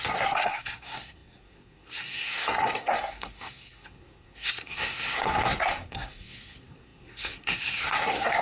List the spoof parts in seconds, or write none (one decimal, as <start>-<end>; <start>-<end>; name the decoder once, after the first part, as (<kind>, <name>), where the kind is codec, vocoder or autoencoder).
0.0-8.4 (codec, SNAC)